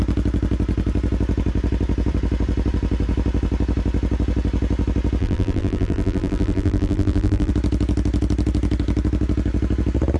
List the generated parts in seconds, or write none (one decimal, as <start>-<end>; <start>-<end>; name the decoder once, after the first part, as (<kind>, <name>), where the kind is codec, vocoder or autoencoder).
5.2-7.5 (vocoder, BigVGAN v2)